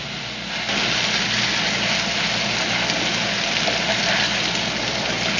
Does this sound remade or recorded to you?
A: recorded